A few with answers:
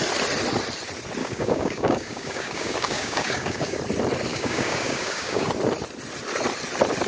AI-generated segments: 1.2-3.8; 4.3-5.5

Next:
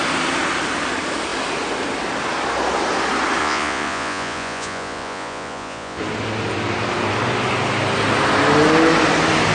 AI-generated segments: 3.4-6.0

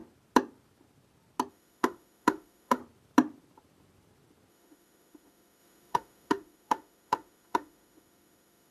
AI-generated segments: 1.5-2.8; 4.5-8.7

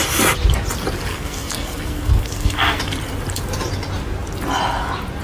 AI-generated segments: 1.1-2.8

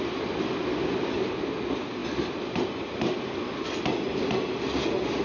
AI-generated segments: none

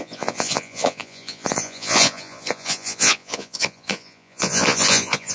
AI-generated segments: 0.0-5.3